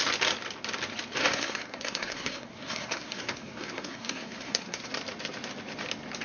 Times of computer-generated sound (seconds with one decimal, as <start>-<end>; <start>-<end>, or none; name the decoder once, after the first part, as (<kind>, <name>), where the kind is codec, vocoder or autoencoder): 1.2-4.9 (codec, SNAC)